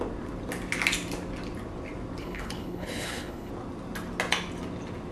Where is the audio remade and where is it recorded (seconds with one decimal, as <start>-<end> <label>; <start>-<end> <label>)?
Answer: 0.0-2.2 recorded; 2.2-3.5 remade; 3.5-5.1 recorded